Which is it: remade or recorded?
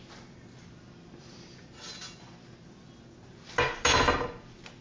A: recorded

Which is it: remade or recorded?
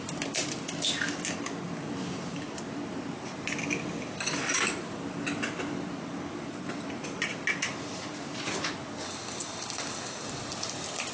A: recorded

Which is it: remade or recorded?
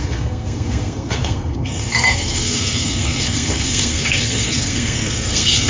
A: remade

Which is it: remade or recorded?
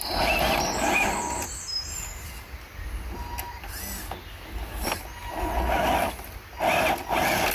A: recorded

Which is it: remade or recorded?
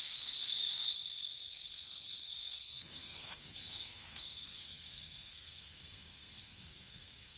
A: remade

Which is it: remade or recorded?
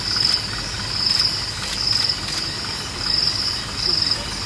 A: recorded